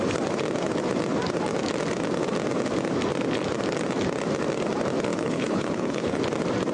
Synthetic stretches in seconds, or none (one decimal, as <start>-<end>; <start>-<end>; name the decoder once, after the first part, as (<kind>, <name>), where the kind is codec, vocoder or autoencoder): 5.1-6.2 (codec, HILCodec)